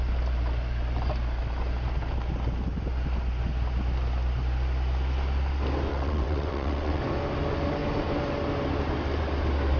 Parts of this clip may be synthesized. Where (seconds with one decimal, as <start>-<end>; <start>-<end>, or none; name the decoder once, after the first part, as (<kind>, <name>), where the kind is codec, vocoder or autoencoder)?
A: 5.9-7.0 (vocoder, WaveNeXt)